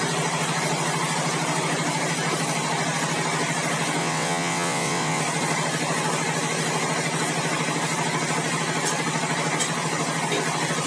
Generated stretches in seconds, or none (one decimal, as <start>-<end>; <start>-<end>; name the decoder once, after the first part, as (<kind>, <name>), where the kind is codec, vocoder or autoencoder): 4.0-5.2 (vocoder, WaveNeXt)